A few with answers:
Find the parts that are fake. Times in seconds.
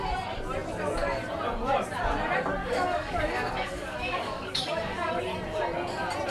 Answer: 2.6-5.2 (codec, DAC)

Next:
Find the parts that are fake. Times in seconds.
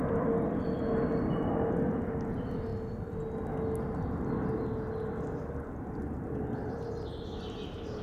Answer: none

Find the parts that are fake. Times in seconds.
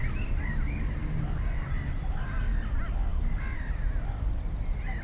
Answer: none